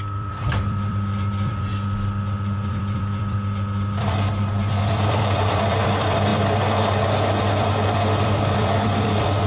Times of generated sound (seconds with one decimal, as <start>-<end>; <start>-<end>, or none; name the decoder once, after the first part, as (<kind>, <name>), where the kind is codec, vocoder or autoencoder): 0.0-6.3 (vocoder, BigVGAN v2); 7.4-9.5